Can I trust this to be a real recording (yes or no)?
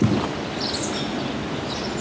yes